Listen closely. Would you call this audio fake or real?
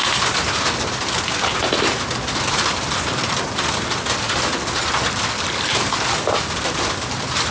real